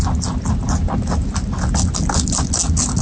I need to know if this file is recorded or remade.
recorded